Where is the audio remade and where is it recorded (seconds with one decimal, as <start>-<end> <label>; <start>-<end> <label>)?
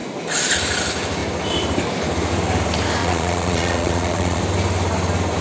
0.0-3.0 recorded; 3.0-4.4 remade; 4.4-5.4 recorded